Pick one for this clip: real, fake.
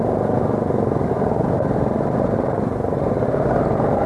real